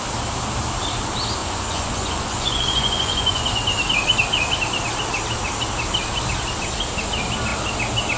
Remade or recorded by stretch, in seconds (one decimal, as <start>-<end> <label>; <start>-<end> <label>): 0.0-1.4 recorded; 1.4-3.5 remade; 3.5-8.2 recorded